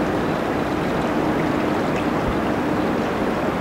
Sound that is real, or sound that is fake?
real